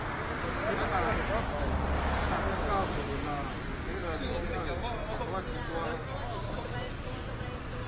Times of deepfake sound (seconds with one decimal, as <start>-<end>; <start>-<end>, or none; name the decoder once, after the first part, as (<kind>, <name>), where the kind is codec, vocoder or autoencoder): none